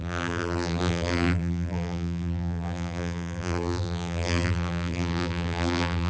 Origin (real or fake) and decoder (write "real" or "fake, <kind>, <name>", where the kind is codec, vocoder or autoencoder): fake, vocoder, BigVGAN v2